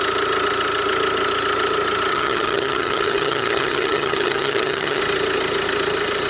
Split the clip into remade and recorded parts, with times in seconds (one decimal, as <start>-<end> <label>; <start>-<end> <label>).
0.0-2.1 recorded; 2.1-5.0 remade; 5.0-6.3 recorded